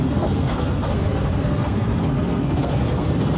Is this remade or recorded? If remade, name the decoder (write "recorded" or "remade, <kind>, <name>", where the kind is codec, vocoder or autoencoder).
remade, codec, SNAC